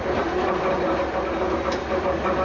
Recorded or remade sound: remade